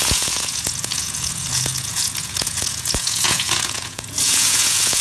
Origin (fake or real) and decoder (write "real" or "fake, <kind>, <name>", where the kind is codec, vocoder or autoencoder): fake, vocoder, Vocos